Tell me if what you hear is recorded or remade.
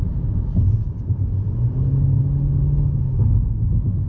recorded